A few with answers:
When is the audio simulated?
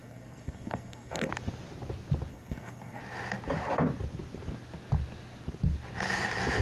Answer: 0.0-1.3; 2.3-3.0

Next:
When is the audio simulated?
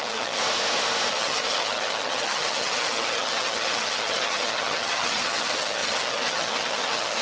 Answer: 0.0-0.4; 1.1-7.2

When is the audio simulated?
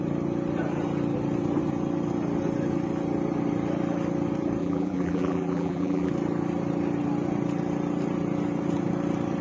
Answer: 4.6-6.1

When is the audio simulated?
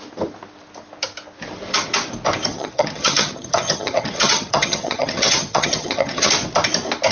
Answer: 2.5-6.3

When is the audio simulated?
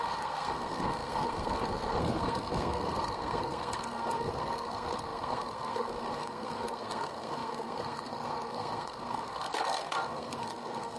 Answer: 0.0-11.0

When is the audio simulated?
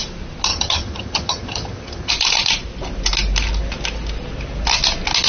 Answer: 0.5-2.1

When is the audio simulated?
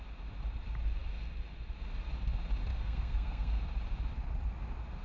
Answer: 2.7-3.6